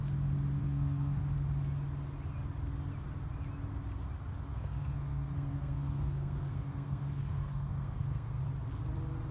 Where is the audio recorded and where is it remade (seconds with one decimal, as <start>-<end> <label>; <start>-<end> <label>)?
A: 0.0-0.6 recorded; 0.6-1.2 remade; 1.2-4.5 recorded; 4.5-8.4 remade; 8.4-9.3 recorded